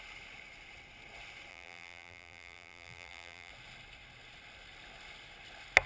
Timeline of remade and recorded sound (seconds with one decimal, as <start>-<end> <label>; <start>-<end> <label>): 0.0-1.5 recorded; 1.5-3.5 remade; 3.5-5.9 recorded